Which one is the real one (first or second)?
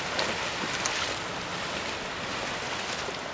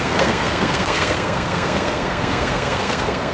first